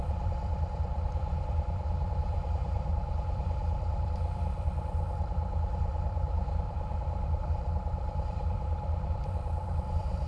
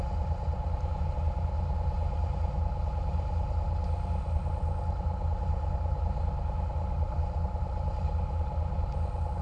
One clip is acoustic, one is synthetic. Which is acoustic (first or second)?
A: second